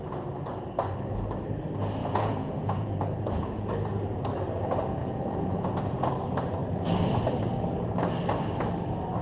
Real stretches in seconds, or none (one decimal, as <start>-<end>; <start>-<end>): 0.0-2.0; 3.7-5.0; 6.1-9.2